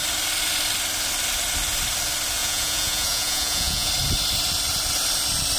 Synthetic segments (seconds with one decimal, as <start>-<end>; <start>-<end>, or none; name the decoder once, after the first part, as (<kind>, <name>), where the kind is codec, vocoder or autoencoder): 2.4-3.9 (vocoder, Vocos)